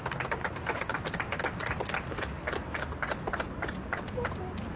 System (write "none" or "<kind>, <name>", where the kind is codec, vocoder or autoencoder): none